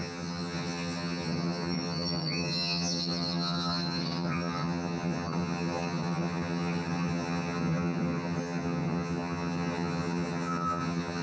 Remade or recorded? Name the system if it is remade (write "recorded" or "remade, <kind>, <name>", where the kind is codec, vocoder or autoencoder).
remade, vocoder, HiFi-GAN